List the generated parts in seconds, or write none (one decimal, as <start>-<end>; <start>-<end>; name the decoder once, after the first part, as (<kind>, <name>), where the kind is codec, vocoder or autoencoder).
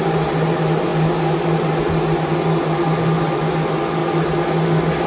none